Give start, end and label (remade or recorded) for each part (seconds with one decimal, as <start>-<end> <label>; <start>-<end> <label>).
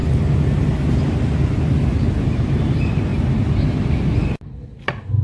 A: 0.0-5.2 recorded